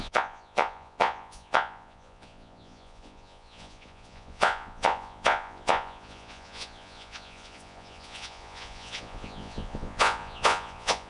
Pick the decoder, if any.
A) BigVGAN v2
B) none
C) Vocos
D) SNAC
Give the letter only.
C